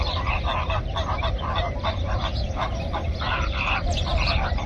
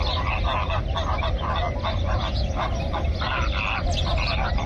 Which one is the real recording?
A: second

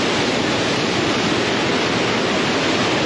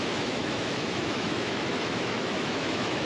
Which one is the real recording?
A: first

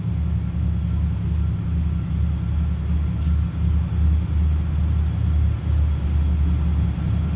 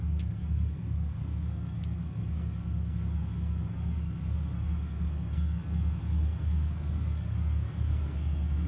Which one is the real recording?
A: first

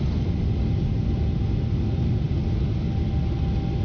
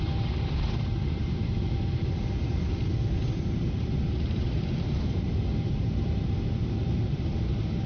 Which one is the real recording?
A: first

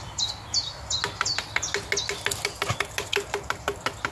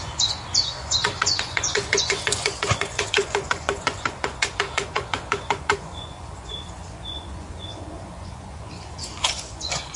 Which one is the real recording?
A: first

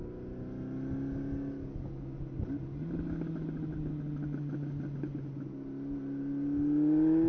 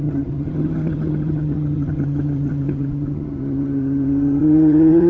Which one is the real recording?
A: first